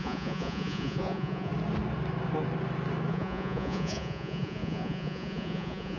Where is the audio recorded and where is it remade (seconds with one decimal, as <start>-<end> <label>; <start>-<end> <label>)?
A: 0.0-1.5 remade; 1.5-3.1 recorded; 3.1-6.0 remade